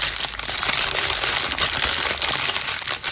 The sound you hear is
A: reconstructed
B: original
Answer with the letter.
B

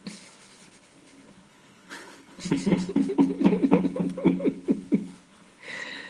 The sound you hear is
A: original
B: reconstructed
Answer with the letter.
B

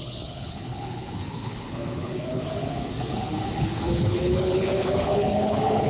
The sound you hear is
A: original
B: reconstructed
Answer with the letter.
B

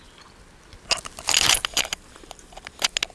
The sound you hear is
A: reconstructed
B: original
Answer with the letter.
B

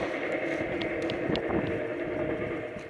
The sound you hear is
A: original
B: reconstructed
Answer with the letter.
A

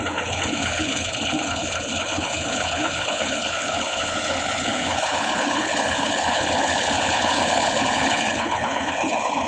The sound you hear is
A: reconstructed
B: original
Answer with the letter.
A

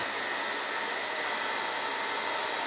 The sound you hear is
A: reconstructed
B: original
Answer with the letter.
B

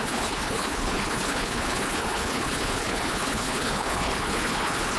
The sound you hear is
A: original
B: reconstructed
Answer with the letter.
B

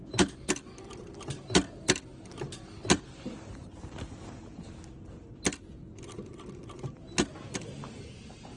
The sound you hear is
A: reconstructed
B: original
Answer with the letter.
B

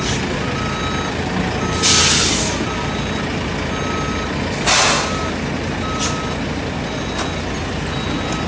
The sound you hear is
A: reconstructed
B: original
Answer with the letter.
B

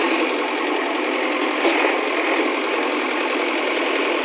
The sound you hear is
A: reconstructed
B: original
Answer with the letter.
B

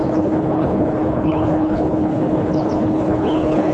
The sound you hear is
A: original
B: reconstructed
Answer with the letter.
B